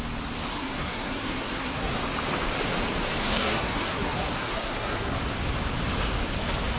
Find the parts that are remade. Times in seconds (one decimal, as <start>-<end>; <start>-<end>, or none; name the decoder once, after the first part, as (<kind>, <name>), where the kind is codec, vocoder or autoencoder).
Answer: 0.5-2.0 (codec, SNAC); 3.2-5.2